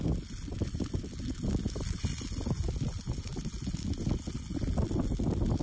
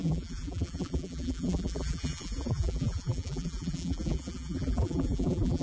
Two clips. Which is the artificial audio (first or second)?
second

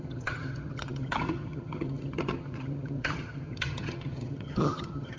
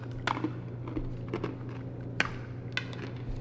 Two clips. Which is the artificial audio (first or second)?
first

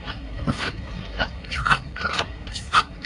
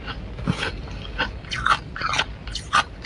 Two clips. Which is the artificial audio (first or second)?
first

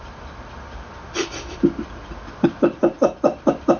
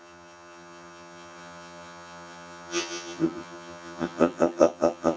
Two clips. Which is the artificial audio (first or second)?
second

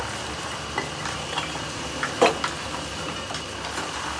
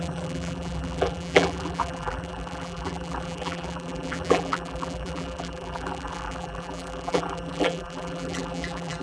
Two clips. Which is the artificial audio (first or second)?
second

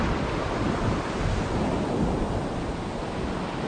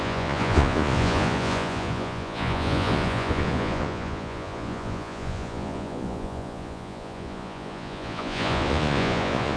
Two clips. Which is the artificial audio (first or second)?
second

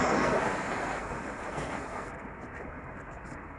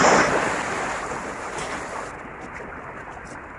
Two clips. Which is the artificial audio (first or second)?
first